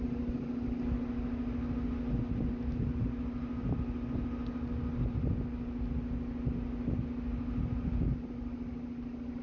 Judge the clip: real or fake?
real